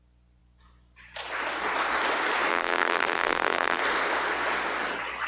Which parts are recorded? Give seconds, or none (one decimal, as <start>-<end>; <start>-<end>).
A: 0.0-2.5; 3.8-5.3